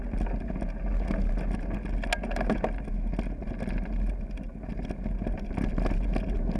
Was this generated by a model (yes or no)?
no